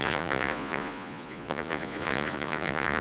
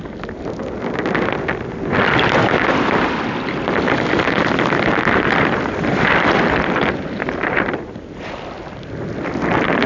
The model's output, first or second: first